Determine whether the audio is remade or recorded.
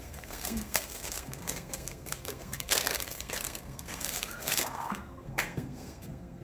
remade